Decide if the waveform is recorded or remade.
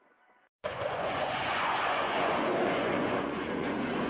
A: remade